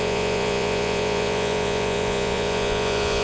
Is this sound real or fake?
fake